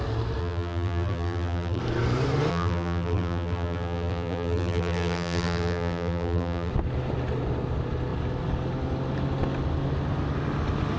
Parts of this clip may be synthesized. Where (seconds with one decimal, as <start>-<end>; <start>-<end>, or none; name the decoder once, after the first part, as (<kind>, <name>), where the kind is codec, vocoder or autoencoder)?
0.4-1.8 (vocoder, BigVGAN v2); 2.5-6.7